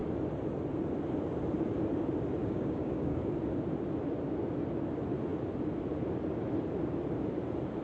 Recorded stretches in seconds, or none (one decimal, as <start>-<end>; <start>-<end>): 0.0-2.4; 3.4-7.8